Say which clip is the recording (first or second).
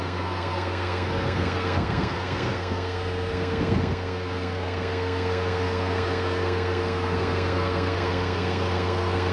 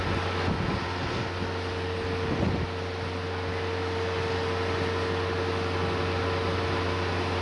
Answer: second